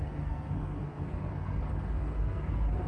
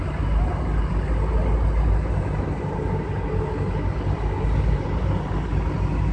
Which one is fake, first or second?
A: first